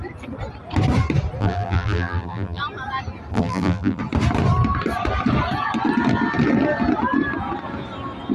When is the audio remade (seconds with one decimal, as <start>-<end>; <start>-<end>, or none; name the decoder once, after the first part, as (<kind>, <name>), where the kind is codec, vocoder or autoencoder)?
1.4-2.6 (vocoder, BigVGAN v2); 3.3-4.0